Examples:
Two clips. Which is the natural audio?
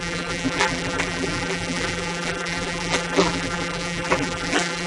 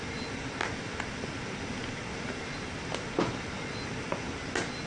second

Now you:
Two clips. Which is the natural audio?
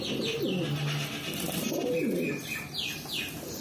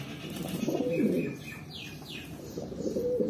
first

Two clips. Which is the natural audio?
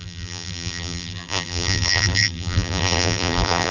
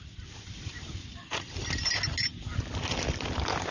second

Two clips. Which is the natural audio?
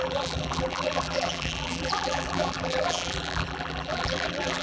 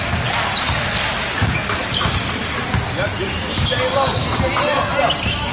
second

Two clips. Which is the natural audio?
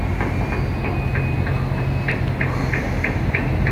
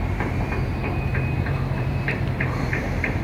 first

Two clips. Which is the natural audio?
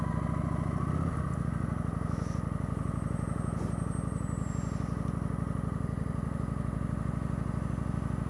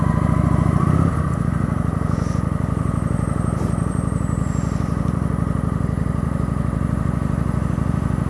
first